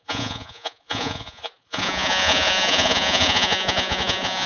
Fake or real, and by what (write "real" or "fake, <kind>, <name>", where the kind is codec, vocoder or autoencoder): fake, vocoder, Vocos